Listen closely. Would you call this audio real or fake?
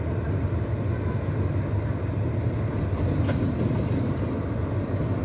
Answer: real